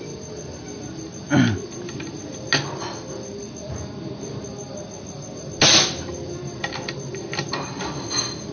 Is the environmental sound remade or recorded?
recorded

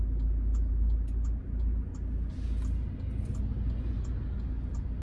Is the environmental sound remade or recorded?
recorded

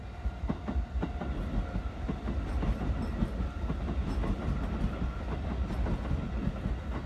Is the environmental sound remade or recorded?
recorded